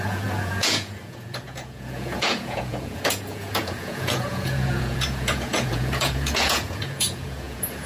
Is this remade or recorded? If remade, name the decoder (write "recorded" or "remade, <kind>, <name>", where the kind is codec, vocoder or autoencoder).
remade, vocoder, Vocos